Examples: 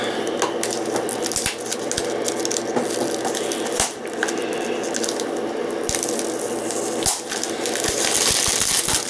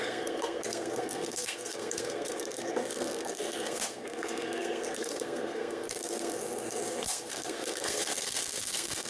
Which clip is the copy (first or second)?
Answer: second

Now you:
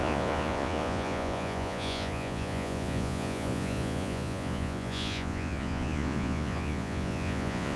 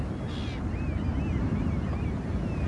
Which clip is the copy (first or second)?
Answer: first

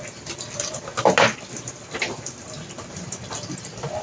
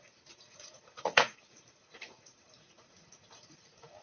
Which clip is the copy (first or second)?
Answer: second